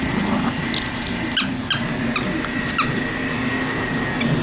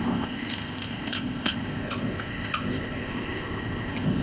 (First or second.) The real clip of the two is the first